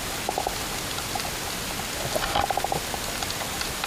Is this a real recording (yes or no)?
yes